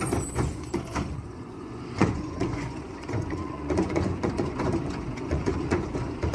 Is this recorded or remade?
remade